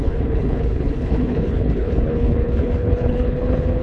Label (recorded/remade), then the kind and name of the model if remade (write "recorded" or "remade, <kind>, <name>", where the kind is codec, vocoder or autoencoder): remade, codec, HILCodec